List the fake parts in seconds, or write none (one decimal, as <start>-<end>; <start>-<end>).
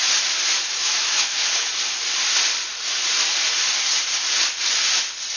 0.8-1.7